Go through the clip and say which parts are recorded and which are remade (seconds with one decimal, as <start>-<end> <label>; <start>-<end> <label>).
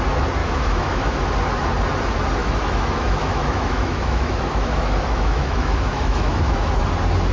0.0-0.4 recorded; 0.4-1.2 remade; 1.2-2.4 recorded; 2.4-6.8 remade; 6.8-7.3 recorded